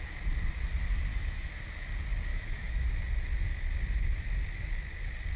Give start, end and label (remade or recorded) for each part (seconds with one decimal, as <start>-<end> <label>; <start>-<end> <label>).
0.0-1.1 recorded; 1.1-1.6 remade; 1.6-2.3 recorded; 2.3-2.9 remade; 2.9-5.4 recorded